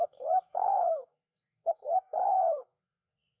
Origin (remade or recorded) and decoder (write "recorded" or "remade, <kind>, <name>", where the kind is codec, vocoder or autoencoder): remade, codec, SNAC